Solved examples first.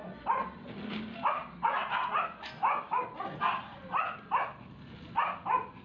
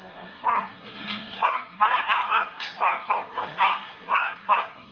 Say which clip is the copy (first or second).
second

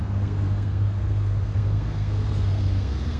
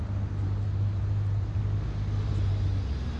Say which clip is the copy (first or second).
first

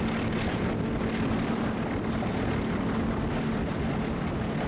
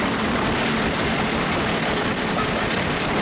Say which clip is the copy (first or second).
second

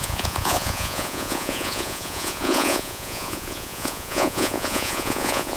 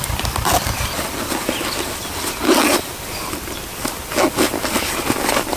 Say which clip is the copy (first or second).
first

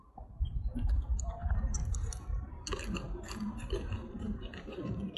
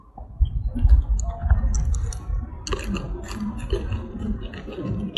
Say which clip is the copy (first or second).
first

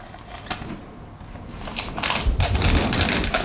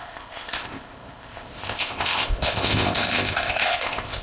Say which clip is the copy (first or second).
second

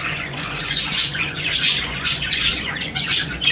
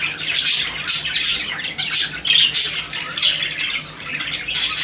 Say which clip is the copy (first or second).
first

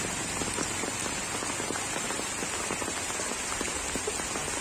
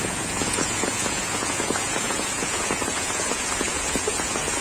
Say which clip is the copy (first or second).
second